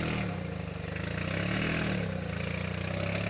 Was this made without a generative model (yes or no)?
yes